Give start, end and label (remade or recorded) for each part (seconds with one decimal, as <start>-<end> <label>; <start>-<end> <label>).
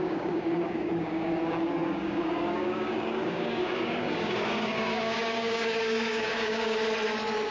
0.0-6.8 remade; 6.8-7.5 recorded